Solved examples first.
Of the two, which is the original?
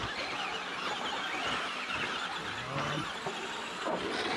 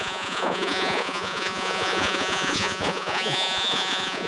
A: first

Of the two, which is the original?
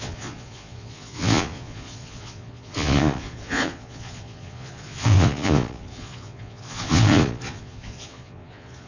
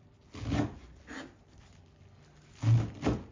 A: second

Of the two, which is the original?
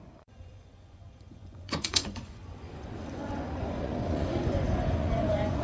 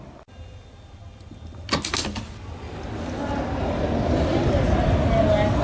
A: second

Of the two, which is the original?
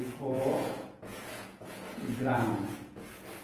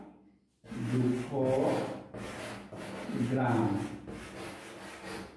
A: second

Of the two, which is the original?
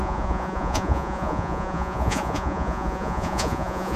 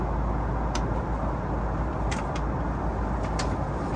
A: second